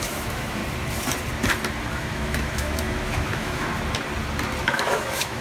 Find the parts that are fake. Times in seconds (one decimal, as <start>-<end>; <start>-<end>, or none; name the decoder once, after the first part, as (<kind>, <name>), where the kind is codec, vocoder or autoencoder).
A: 0.0-0.6 (autoencoder, DAC-VAE); 1.9-3.7; 4.6-5.4